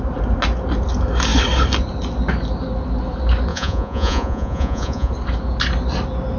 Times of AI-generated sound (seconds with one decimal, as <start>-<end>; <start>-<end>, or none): 3.5-5.1